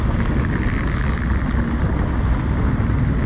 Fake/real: real